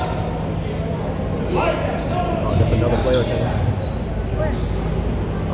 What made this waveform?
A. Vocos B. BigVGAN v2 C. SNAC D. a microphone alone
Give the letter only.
D